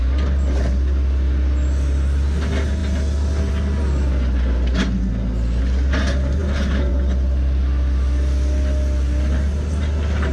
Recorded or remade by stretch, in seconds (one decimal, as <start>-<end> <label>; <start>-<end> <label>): 0.0-10.3 recorded